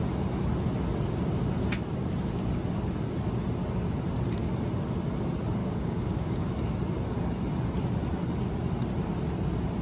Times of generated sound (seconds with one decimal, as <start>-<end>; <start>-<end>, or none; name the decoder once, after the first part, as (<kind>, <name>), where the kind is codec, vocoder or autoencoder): 5.6-6.5 (codec, DAC)